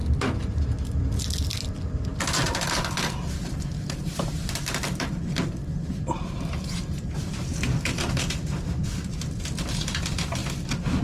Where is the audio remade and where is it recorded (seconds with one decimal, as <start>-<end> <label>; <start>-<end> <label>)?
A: 0.0-11.0 recorded